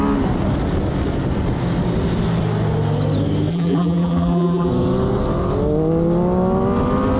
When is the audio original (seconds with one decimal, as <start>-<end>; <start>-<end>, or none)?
0.0-3.5; 4.7-7.2